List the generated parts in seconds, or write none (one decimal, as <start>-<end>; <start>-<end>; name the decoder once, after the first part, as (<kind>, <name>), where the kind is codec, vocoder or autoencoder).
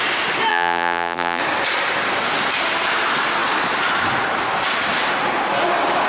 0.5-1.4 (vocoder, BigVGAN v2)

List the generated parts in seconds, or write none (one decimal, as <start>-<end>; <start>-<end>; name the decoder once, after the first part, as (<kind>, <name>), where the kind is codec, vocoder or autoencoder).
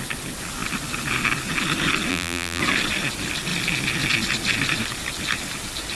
2.1-2.6 (vocoder, BigVGAN v2)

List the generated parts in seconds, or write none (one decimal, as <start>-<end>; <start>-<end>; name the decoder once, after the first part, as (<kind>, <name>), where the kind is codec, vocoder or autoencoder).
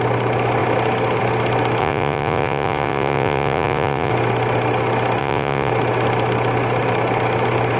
1.8-4.1 (vocoder, Vocos); 5.2-5.7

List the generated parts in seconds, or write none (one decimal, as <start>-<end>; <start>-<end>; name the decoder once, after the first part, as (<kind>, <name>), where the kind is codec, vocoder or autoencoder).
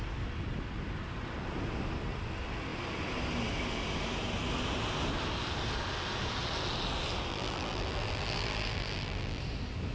7.3-9.4 (vocoder, BigVGAN v2)